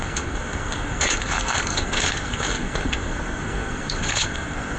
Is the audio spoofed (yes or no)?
yes